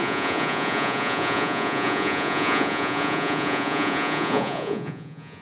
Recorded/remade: remade